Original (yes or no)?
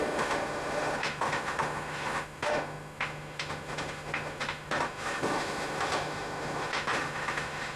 no